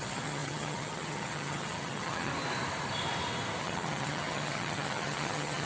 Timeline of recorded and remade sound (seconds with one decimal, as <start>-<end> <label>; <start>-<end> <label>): 0.0-2.3 remade; 2.3-3.6 recorded; 3.6-5.7 remade